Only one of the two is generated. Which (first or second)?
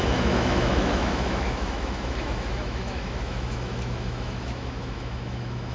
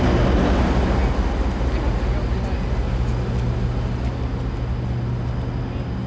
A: first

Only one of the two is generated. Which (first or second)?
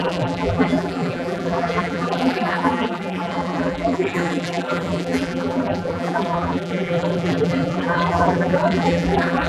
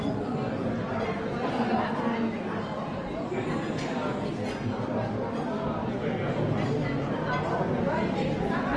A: first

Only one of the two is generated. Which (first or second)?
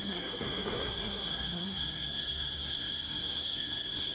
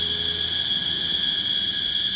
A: first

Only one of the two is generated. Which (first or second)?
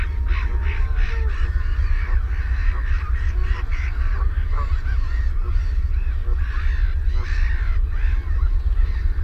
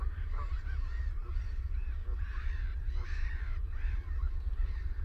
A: second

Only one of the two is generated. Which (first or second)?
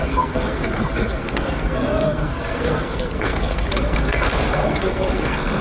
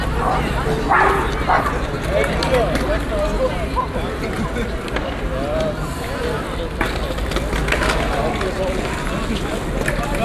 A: first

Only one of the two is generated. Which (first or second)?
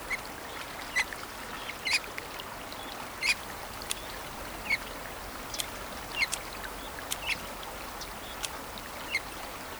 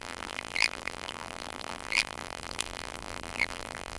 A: second